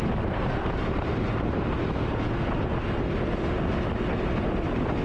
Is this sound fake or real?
real